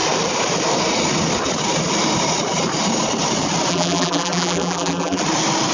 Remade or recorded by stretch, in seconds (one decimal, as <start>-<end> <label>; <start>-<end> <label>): 0.0-3.7 recorded; 3.7-5.2 remade; 5.2-5.7 recorded